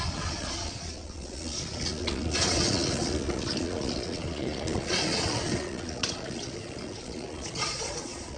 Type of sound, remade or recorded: remade